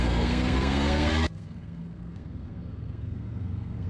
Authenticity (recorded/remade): remade